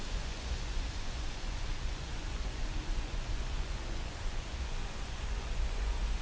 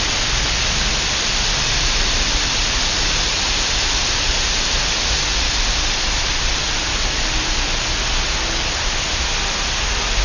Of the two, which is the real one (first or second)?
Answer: second